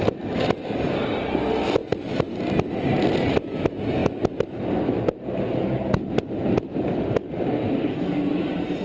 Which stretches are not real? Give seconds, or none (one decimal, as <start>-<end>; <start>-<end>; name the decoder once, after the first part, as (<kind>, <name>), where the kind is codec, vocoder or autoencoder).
none